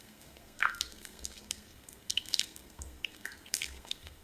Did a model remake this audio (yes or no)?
yes